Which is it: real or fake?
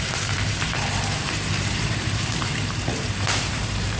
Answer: fake